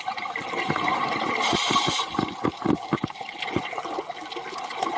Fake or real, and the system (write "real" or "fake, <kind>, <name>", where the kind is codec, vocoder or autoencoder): real